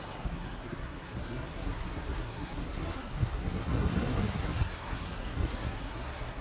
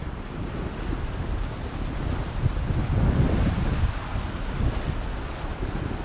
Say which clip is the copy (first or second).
first